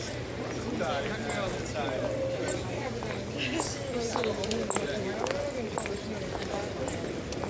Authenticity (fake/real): real